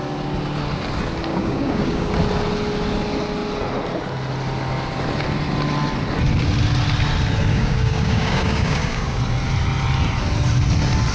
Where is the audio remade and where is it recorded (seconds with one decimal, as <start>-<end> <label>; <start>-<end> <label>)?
0.0-1.3 recorded; 1.3-2.1 remade; 2.1-7.5 recorded; 7.5-9.2 remade; 9.2-11.1 recorded